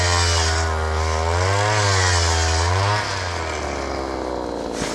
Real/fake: real